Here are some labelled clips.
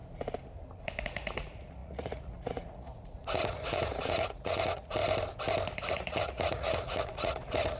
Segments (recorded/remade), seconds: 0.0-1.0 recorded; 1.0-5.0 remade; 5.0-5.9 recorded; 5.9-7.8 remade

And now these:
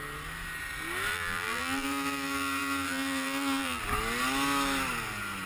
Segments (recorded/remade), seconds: 0.0-1.1 recorded; 1.1-3.8 remade; 3.8-5.5 recorded

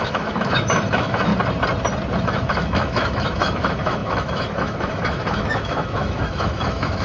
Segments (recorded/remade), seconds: 0.0-1.3 remade; 1.3-2.2 recorded; 2.2-7.0 remade

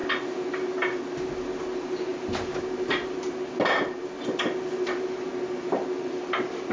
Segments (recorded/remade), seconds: 0.0-6.7 recorded

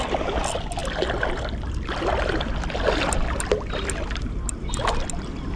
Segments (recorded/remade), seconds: 0.0-5.6 recorded

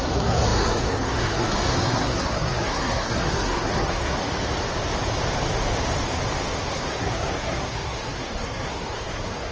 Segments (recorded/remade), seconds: 0.0-4.2 remade; 4.2-6.5 recorded; 6.5-9.5 remade

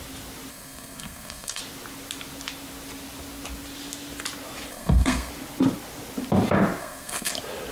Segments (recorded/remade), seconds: 0.0-0.5 recorded; 0.5-1.6 remade; 1.6-4.7 recorded; 4.7-5.3 remade; 5.3-6.8 recorded; 6.8-7.3 remade; 7.3-7.7 recorded

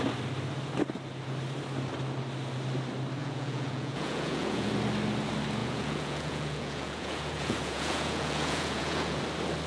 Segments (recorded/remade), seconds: 0.0-3.2 recorded; 3.2-4.7 remade; 4.7-5.6 recorded; 5.6-9.2 remade; 9.2-9.7 recorded